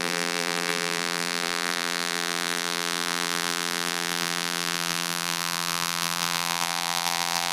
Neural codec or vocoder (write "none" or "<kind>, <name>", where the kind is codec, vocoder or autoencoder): vocoder, BigVGAN v2